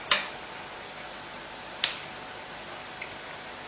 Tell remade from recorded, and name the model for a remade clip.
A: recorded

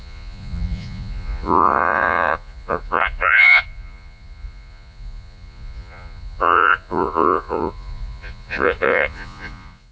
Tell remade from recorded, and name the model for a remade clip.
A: remade, vocoder, Vocos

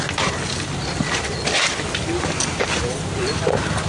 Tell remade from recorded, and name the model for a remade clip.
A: recorded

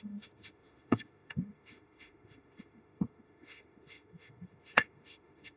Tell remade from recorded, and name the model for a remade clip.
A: remade, autoencoder, DAC-VAE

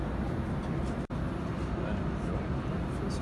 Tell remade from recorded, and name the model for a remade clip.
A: recorded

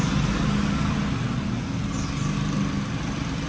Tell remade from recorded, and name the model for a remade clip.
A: recorded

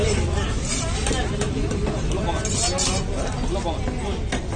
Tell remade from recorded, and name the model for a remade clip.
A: recorded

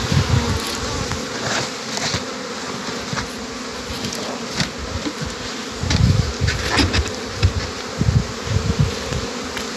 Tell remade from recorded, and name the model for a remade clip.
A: recorded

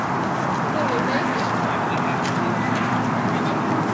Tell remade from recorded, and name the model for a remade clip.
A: recorded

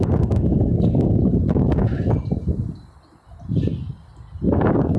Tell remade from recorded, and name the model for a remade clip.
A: recorded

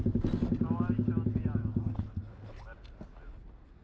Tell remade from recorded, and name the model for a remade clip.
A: recorded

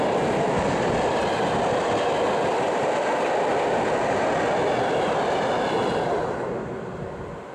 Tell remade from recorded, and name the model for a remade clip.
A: recorded